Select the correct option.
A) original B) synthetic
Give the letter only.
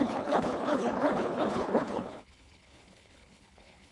B